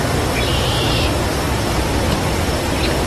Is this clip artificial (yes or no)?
yes